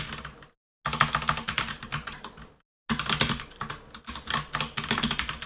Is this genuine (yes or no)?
yes